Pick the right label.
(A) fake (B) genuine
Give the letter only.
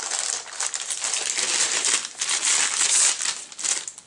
B